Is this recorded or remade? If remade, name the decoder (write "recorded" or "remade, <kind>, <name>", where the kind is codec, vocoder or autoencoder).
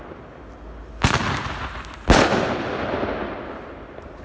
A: recorded